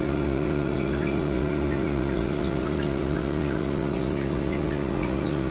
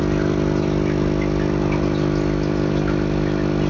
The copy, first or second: first